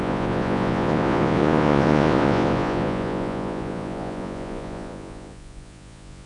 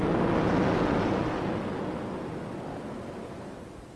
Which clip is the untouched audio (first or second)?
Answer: second